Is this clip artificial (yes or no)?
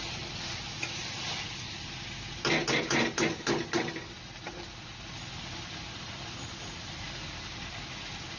no